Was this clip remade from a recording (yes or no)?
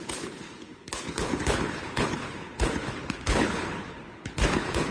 yes